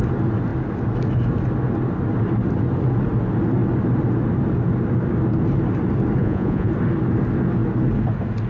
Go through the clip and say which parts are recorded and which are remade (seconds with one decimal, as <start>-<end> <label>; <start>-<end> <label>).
0.0-6.2 recorded; 6.2-6.7 remade; 6.7-8.5 recorded